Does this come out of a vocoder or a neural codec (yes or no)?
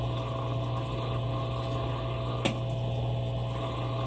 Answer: no